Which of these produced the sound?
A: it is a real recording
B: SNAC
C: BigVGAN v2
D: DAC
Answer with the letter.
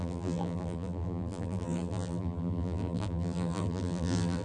C